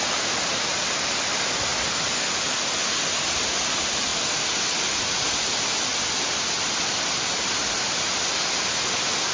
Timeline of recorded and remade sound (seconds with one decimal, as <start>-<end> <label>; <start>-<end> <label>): 0.0-9.3 recorded